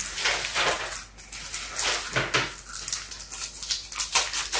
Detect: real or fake real